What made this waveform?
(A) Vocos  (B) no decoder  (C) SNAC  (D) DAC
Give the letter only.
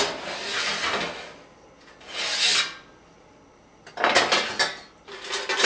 B